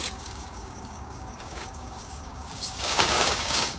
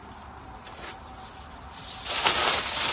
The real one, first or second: second